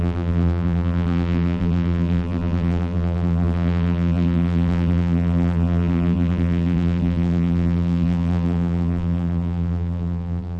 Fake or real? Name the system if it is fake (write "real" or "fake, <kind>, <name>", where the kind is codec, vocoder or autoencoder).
fake, vocoder, BigVGAN v2